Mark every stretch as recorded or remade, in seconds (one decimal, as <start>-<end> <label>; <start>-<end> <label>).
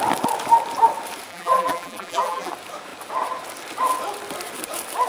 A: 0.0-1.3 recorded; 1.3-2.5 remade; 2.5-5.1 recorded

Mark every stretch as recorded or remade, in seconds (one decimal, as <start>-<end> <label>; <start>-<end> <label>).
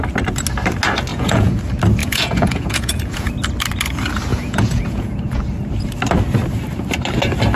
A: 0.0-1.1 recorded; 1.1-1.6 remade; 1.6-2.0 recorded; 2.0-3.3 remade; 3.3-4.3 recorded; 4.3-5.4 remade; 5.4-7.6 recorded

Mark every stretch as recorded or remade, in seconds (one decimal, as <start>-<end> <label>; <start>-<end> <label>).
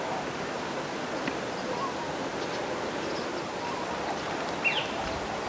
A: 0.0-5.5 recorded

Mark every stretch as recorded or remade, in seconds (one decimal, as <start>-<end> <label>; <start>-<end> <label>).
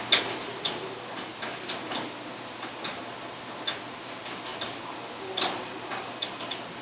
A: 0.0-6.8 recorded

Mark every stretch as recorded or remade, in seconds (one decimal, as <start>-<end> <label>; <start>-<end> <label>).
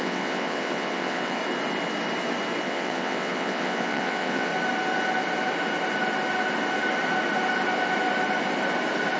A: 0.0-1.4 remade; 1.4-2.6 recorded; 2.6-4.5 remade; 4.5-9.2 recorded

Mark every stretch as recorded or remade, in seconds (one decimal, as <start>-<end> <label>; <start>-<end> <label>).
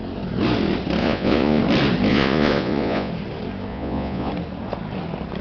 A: 0.0-1.0 recorded; 1.0-1.6 remade; 1.6-2.1 recorded; 2.1-3.1 remade; 3.1-3.7 recorded; 3.7-4.3 remade; 4.3-5.4 recorded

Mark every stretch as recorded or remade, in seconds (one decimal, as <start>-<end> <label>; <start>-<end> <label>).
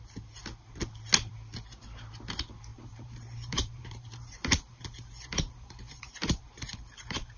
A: 0.0-2.7 recorded; 2.7-7.4 remade